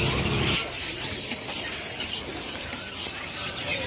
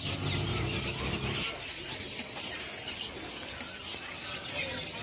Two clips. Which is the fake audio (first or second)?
first